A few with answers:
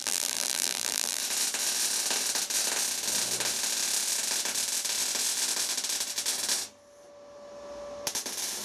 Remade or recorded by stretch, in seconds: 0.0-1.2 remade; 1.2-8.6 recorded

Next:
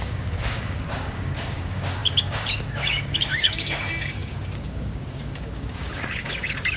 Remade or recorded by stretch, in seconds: 0.0-6.8 remade

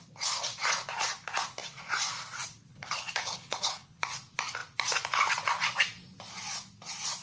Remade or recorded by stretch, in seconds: 0.0-2.7 recorded; 2.7-4.0 remade; 4.0-7.2 recorded

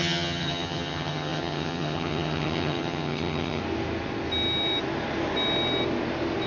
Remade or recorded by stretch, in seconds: 0.0-3.6 remade; 3.6-6.5 recorded

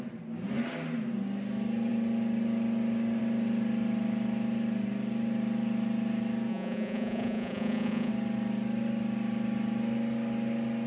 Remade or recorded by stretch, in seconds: 0.0-6.5 recorded; 6.5-8.1 remade; 8.1-10.9 recorded

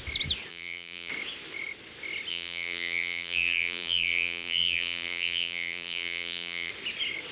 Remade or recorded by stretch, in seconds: 0.0-0.5 recorded; 0.5-1.1 remade; 1.1-2.3 recorded; 2.3-6.7 remade; 6.7-7.3 recorded

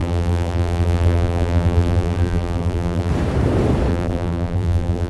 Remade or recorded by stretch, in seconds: 0.0-3.1 remade; 3.1-3.9 recorded; 3.9-5.1 remade

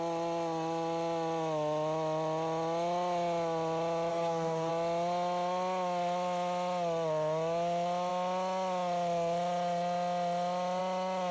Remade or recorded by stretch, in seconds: 0.0-4.1 recorded; 4.1-4.7 remade; 4.7-11.3 recorded